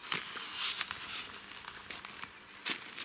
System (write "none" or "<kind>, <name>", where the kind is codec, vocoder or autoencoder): none